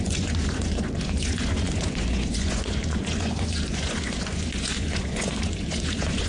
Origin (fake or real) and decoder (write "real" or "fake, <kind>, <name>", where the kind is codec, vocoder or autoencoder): fake, vocoder, Vocos